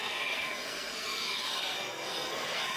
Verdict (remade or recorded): remade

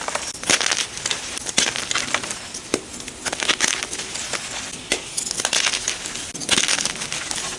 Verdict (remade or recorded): recorded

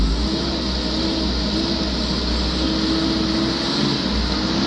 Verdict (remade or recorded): recorded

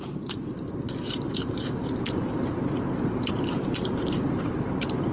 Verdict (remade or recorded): remade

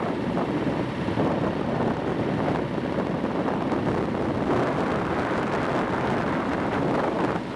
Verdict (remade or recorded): remade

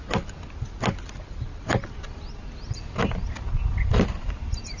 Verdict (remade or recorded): recorded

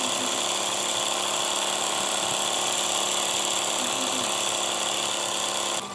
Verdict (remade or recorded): recorded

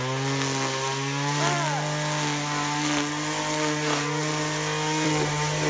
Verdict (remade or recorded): recorded